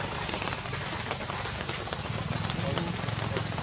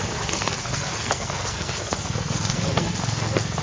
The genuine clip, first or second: first